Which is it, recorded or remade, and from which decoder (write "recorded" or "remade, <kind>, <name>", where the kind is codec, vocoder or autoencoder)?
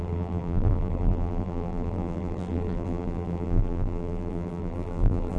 remade, vocoder, BigVGAN v2